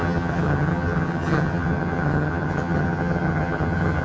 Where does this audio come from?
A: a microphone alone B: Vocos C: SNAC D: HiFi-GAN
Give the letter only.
D